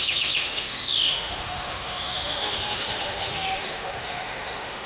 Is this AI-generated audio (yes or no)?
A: yes